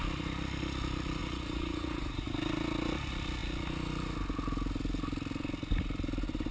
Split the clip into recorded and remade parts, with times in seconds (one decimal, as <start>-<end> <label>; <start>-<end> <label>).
0.0-1.2 recorded; 1.2-2.3 remade; 2.3-6.5 recorded

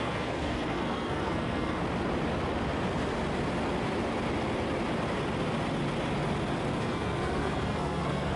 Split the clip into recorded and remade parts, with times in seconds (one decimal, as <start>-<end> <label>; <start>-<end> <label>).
0.0-1.8 remade; 1.8-6.8 recorded; 6.8-8.4 remade

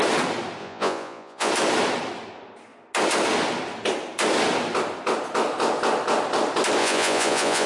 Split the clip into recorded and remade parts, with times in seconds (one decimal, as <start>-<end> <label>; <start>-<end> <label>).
0.0-0.6 recorded; 0.6-1.5 remade; 1.5-6.8 recorded; 6.8-7.7 remade

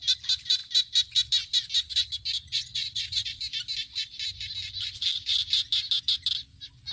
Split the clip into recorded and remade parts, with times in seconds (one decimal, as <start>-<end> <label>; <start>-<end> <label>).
0.0-2.5 recorded; 2.5-3.4 remade; 3.4-6.9 recorded

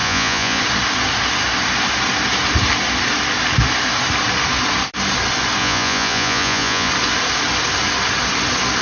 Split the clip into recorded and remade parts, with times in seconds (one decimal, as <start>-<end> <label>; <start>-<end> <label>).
0.0-0.6 remade; 0.6-5.6 recorded; 5.6-6.9 remade; 6.9-8.8 recorded

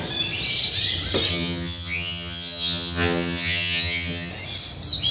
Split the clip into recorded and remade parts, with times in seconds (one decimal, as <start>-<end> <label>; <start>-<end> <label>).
0.0-1.3 recorded; 1.3-4.3 remade; 4.3-5.1 recorded

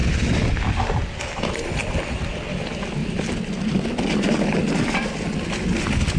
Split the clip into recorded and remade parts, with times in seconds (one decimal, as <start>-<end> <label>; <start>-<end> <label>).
0.0-6.2 recorded